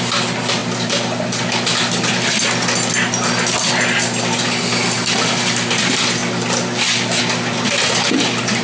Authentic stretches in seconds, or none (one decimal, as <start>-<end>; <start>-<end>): 0.0-8.6